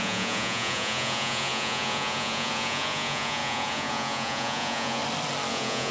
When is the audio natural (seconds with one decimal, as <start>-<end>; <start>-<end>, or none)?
5.0-5.5